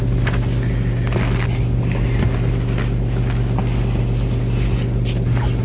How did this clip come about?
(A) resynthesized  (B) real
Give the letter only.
B